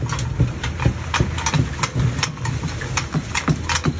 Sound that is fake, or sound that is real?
real